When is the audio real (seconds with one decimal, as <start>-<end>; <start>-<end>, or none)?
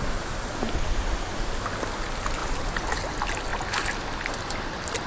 0.0-5.1